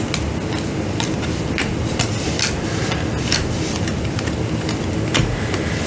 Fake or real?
real